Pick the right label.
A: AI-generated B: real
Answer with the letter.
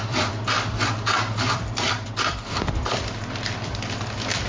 A